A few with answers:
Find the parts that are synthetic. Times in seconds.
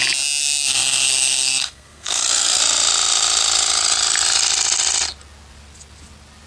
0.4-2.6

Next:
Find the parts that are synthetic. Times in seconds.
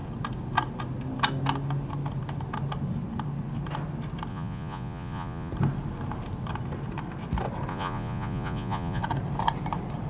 4.3-5.5; 7.7-9.0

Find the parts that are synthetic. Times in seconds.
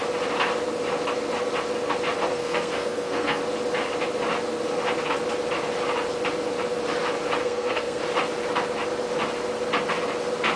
2.3-3.4; 7.4-8.0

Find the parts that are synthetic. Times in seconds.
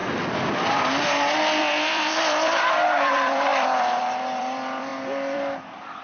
1.6-6.0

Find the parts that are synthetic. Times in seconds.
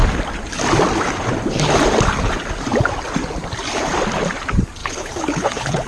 4.8-5.9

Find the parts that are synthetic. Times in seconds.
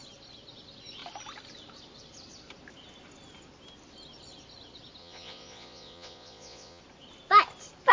5.0-6.8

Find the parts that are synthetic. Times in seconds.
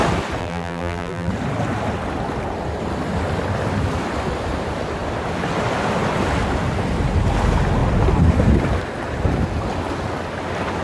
0.4-1.3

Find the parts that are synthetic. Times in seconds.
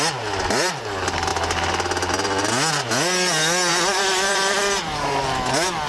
3.7-5.0